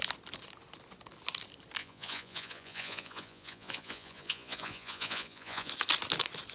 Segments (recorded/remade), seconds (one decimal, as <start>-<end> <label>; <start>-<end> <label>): 0.0-1.8 recorded; 1.8-5.7 remade; 5.7-6.5 recorded